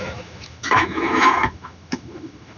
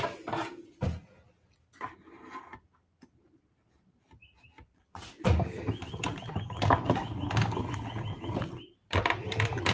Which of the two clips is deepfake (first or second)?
first